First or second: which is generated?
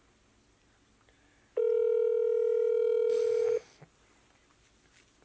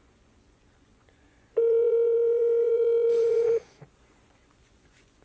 second